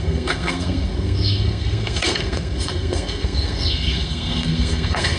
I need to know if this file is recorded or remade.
remade